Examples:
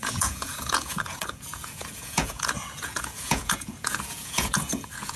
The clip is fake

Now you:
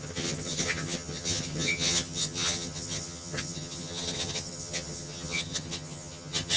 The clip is fake